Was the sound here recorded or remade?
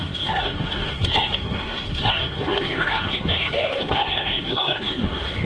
remade